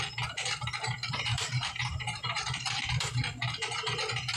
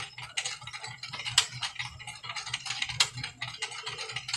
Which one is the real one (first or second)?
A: second